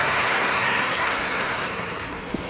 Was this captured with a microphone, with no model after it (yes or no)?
no